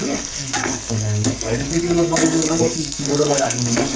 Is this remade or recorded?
remade